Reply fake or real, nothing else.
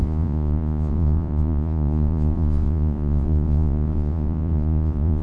fake